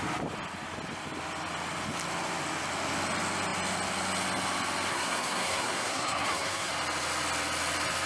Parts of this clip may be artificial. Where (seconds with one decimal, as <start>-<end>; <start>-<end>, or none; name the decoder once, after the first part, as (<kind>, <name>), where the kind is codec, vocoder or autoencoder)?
4.9-6.7 (codec, SNAC)